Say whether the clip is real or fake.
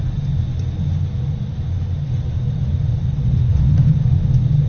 real